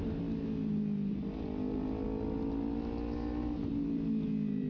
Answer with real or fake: real